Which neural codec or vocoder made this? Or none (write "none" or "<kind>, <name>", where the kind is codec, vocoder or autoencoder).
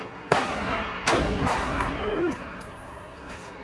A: codec, SNAC